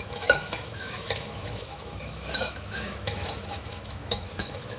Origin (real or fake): fake